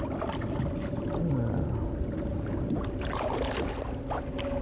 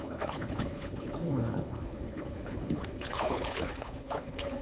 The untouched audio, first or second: first